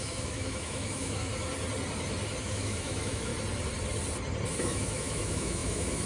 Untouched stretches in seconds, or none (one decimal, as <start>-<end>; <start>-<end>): 1.3-2.4; 3.3-4.5